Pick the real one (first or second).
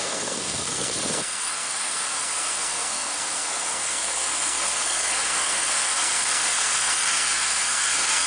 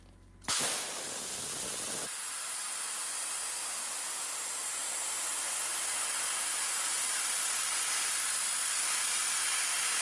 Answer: second